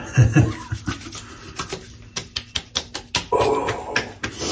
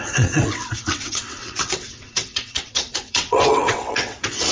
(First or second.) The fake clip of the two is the second